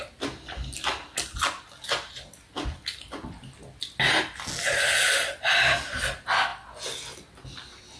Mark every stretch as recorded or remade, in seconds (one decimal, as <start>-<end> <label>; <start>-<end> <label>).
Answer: 0.0-8.0 recorded